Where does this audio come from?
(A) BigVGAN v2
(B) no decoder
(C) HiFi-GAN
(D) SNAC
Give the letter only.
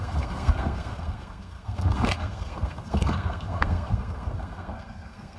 D